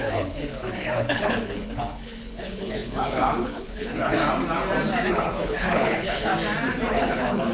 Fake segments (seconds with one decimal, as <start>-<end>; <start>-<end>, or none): 0.0-4.2; 5.1-6.3; 6.9-7.5